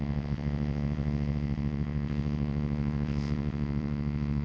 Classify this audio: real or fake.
fake